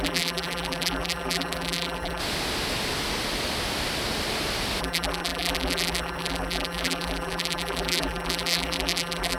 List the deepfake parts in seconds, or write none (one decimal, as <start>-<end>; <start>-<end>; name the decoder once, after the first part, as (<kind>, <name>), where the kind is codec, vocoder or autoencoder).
0.0-2.2 (vocoder, BigVGAN v2); 4.8-9.4